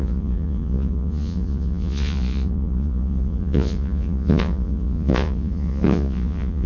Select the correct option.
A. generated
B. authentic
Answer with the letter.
A